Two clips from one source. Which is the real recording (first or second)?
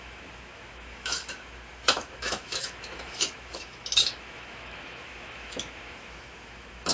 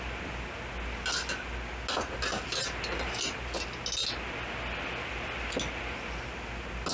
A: second